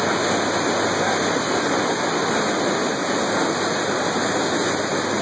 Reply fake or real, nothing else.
real